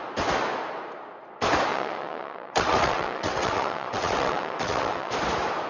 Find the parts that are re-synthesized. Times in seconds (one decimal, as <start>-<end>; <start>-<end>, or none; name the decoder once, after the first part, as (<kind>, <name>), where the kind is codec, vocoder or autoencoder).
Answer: 1.7-5.1 (vocoder, WaveNeXt)